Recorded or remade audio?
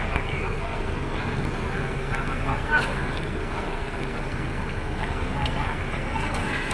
remade